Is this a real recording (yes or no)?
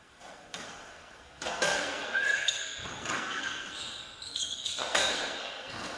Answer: no